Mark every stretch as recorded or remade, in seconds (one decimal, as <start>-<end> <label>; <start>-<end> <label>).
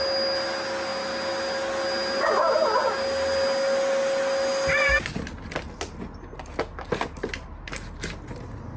0.0-8.8 recorded